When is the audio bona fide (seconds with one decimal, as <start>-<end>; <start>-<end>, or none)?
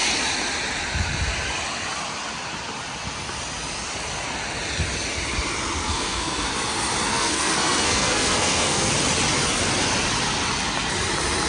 0.0-5.8; 6.5-7.1; 8.9-11.5